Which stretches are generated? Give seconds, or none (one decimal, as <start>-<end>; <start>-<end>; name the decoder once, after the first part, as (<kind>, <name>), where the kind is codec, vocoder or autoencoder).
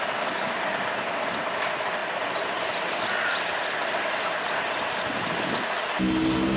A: none